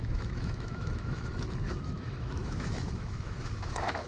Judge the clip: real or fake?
fake